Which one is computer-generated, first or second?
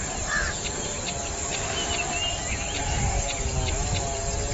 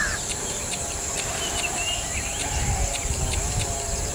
second